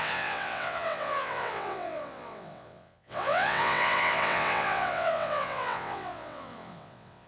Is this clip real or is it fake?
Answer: fake